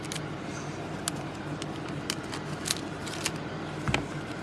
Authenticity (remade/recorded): recorded